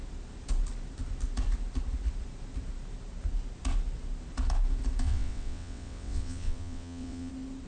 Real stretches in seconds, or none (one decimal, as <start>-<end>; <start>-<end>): 0.0-5.0; 7.3-7.7